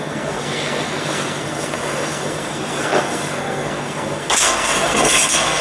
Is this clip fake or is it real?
fake